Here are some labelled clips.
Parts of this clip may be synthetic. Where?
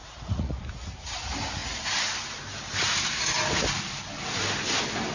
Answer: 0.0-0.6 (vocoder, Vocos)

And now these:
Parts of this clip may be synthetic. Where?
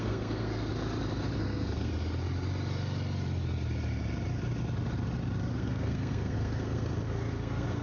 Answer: 0.0-0.7 (codec, SNAC); 1.4-1.9; 5.5-7.8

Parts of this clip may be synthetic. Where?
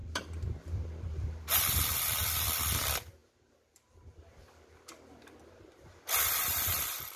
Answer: 0.0-7.2 (vocoder, BigVGAN v2)